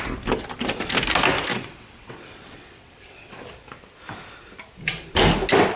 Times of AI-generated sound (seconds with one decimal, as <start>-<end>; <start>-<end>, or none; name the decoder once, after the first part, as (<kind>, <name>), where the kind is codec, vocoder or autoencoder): 1.5-3.4 (vocoder, WaveNeXt)